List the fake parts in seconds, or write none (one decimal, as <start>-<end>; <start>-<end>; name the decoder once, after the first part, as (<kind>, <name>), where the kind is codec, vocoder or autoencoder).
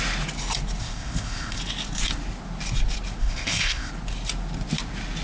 0.8-1.6 (codec, ZipCodec); 3.2-3.9